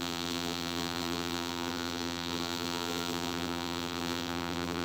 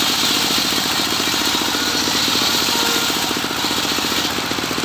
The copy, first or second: first